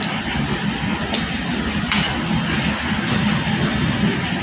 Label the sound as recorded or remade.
recorded